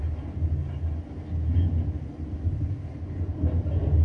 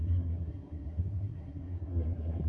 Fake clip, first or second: second